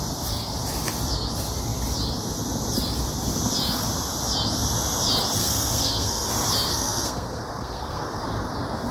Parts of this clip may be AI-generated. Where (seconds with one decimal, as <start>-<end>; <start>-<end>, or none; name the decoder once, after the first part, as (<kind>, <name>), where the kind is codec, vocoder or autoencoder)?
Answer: 5.4-6.3 (codec, SNAC); 6.7-8.2